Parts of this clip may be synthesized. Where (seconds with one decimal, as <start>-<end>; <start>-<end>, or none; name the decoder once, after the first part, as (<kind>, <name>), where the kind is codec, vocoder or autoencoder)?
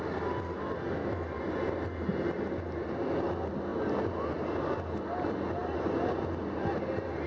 none